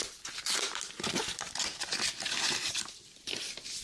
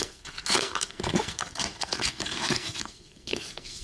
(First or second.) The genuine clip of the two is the first